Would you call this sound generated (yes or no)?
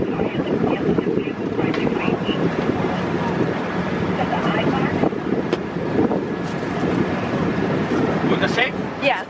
yes